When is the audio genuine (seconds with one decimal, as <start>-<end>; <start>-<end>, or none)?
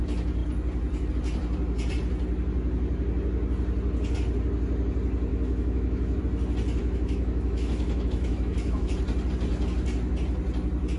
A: 0.0-5.3; 6.2-6.8; 8.9-11.0